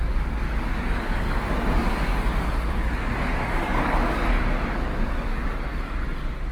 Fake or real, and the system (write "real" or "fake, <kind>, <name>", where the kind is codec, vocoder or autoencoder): fake, codec, DAC